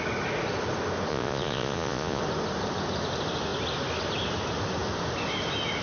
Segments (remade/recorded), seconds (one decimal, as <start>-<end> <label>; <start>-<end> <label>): 0.0-1.1 recorded; 1.1-2.2 remade; 2.2-5.8 recorded